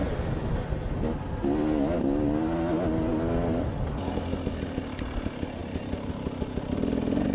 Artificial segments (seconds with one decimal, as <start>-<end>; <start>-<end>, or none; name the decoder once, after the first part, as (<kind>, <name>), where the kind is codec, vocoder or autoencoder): none